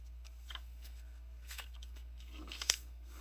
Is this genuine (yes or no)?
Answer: no